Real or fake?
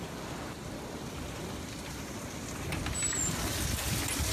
real